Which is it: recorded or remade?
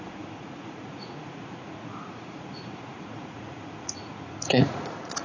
remade